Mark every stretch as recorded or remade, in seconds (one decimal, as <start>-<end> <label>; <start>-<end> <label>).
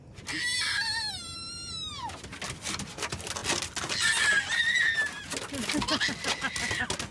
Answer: 0.0-7.1 recorded